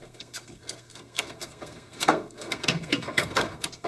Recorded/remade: remade